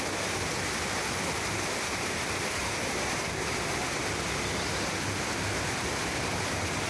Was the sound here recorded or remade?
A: recorded